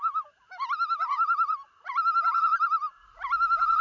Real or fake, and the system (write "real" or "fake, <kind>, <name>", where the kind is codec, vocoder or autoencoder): fake, vocoder, BigVGAN v2